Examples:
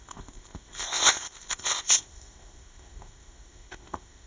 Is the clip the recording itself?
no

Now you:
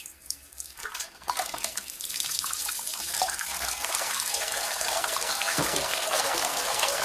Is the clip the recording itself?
no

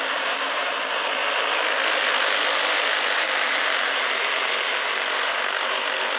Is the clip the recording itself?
no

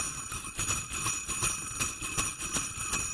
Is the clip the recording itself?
yes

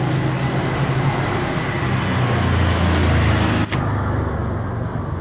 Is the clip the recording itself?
yes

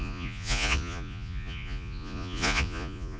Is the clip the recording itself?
no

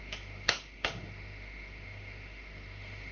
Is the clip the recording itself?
no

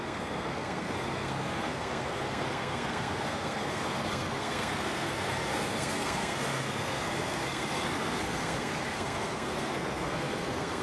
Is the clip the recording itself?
no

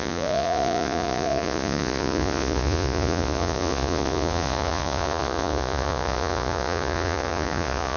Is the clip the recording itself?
no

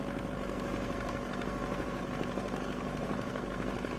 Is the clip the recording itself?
no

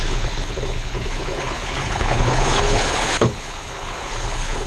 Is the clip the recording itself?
no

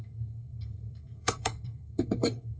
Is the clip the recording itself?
no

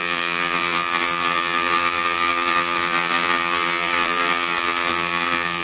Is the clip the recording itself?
no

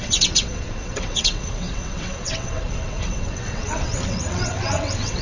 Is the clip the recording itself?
no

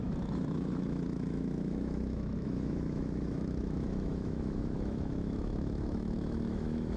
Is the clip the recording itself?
no